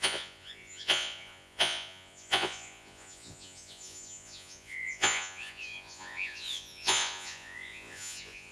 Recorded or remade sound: remade